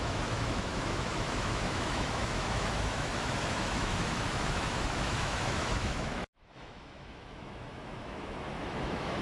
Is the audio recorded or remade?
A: remade